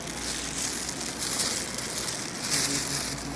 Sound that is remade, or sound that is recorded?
recorded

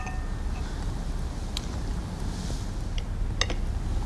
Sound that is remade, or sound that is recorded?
recorded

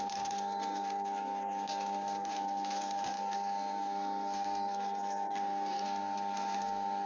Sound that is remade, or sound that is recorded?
remade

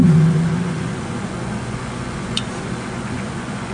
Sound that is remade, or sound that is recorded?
remade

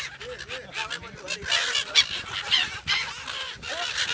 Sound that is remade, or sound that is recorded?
recorded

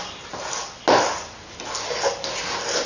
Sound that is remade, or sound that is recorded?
recorded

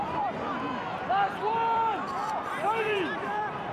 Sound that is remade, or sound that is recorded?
remade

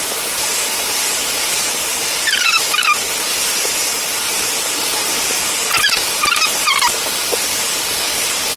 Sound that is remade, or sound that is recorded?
remade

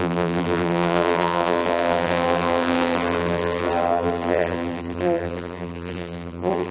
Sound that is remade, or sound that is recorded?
remade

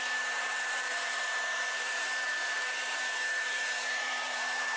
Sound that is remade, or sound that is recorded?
remade